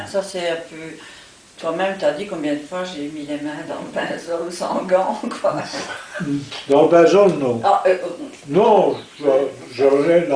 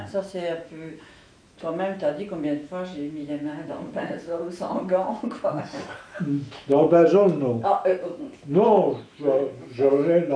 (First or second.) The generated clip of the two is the second